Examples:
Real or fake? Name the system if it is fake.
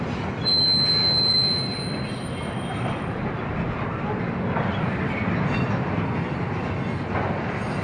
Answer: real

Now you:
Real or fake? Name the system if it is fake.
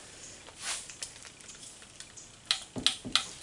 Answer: real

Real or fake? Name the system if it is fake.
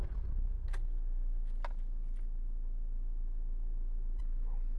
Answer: real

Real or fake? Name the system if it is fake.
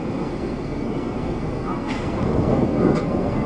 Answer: fake, codec, SNAC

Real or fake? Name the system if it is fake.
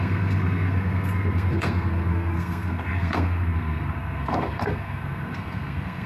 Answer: fake, codec, SNAC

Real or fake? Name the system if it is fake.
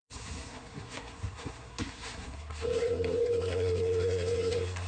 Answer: fake, codec, SNAC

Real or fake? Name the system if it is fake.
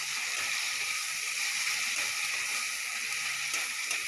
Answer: real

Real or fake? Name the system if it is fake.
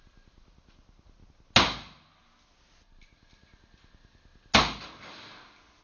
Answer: real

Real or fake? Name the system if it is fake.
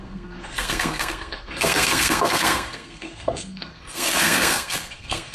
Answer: fake, codec, SNAC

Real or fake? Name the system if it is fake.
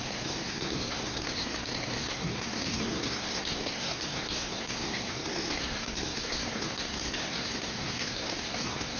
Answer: fake, codec, SNAC